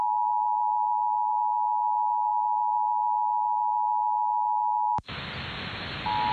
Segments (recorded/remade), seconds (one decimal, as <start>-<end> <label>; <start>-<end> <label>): 0.0-1.3 recorded; 1.3-2.3 remade; 2.3-6.3 recorded